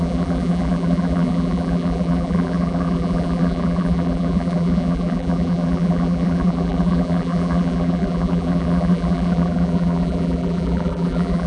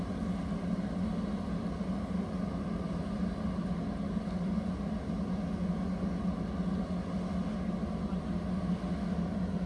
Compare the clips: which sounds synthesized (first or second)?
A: first